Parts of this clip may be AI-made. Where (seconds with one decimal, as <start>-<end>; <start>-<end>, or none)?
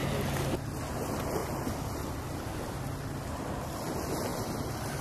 1.4-3.5